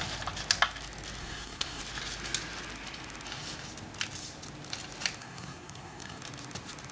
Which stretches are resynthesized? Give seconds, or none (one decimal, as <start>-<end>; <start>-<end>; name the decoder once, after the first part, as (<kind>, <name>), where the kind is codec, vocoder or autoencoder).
1.2-1.8 (codec, SNAC); 5.2-6.2